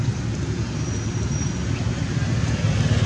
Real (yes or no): yes